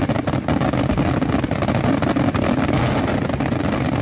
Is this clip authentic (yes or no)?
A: yes